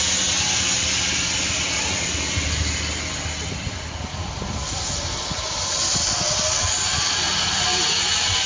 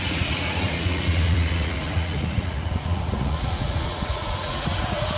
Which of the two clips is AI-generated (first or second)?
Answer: second